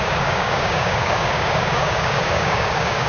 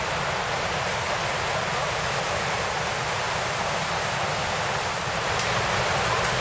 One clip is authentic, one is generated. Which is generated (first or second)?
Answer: first